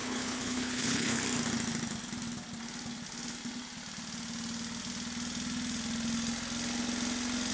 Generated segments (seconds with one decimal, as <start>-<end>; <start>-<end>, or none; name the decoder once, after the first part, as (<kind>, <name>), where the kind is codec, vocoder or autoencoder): 0.0-1.2 (codec, HILCodec)